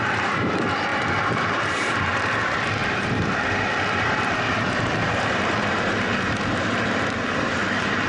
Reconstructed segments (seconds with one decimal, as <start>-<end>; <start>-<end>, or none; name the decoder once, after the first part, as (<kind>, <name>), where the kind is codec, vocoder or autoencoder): 0.0-8.1 (vocoder, BigVGAN v2)

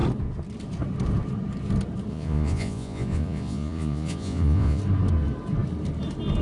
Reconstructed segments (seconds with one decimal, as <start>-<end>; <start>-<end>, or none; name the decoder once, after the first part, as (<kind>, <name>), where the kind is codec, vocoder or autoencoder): 2.1-4.8 (vocoder, Vocos)

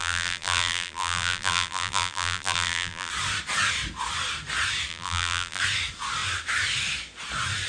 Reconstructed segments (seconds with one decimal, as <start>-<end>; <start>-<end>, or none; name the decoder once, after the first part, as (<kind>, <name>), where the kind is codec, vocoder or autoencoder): 0.0-3.1 (vocoder, BigVGAN v2); 4.9-5.6

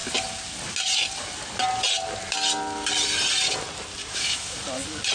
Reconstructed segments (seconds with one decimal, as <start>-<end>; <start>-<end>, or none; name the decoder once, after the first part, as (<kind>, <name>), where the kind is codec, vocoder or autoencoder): 4.0-4.6 (autoencoder, DAC-VAE)

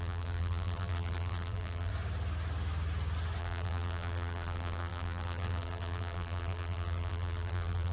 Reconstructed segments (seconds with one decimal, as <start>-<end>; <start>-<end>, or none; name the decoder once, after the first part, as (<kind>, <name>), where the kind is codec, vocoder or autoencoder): 0.0-1.9 (vocoder, BigVGAN v2); 3.4-7.9

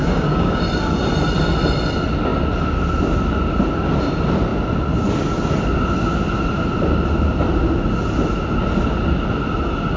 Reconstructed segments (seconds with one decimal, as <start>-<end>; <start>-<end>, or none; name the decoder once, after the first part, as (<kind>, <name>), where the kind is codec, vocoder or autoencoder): 0.0-0.6 (codec, DAC)